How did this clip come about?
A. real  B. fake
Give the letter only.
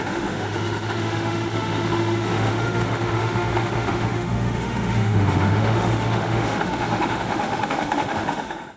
B